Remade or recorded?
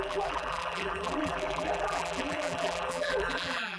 remade